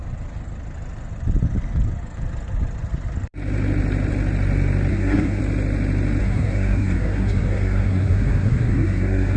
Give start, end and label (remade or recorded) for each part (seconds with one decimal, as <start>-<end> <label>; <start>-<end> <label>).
0.0-4.9 recorded; 4.9-5.4 remade; 5.4-6.2 recorded; 6.2-9.4 remade

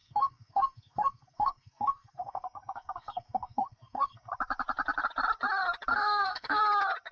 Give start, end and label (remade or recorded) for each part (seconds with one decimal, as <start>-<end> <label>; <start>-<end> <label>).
0.0-4.3 remade; 4.3-5.9 recorded; 5.9-6.6 remade; 6.6-7.1 recorded